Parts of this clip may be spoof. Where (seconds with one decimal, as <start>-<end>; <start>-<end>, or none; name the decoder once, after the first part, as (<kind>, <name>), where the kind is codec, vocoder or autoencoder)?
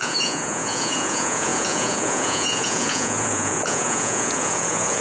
0.0-5.0 (vocoder, Vocos)